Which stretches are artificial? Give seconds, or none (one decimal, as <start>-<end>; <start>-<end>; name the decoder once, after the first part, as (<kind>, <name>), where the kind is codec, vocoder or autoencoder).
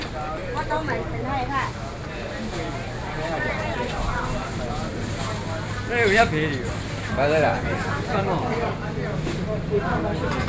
none